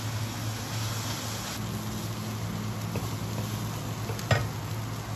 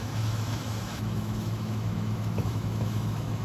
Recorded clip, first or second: first